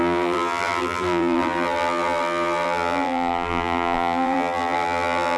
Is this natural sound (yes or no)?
no